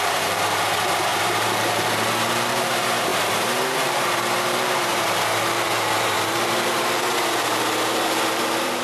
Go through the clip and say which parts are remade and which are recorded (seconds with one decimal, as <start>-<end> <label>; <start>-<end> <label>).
0.0-8.8 remade